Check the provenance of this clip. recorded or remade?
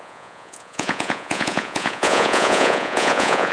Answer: remade